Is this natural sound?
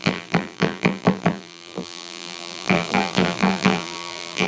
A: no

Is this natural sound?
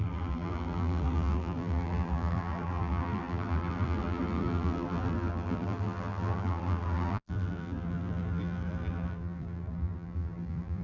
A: no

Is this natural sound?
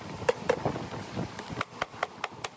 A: yes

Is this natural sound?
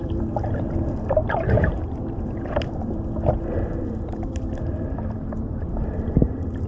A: no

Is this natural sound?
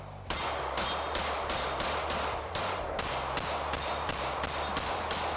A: yes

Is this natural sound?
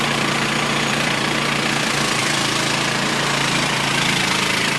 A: no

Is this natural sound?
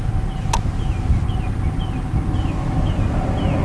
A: yes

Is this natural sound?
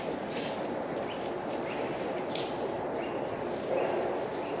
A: no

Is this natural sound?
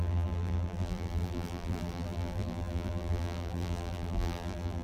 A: no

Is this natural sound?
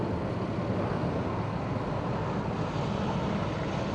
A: yes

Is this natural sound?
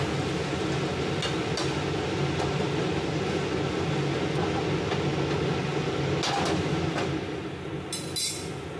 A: yes